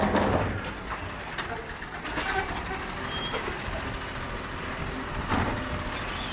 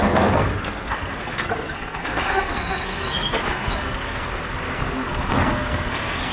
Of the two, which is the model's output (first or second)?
second